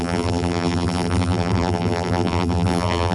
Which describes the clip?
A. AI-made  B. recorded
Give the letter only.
A